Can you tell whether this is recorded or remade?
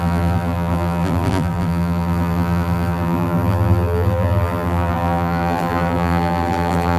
remade